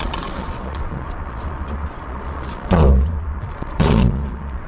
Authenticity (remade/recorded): remade